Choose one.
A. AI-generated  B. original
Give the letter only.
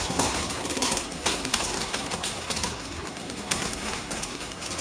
A